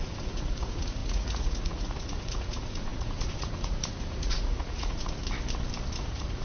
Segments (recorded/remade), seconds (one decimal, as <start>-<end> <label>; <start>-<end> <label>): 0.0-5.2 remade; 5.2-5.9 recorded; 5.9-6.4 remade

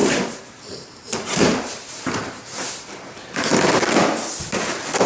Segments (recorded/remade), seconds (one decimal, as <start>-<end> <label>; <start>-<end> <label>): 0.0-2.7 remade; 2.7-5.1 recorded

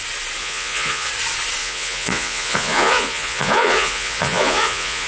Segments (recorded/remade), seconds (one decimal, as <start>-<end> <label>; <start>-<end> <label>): 0.0-0.4 recorded; 0.4-1.1 remade; 1.1-1.6 recorded; 1.6-5.1 remade

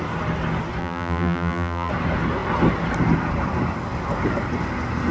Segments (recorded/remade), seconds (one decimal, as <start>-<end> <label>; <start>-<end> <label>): 0.0-0.8 recorded; 0.8-1.9 remade; 1.9-5.1 recorded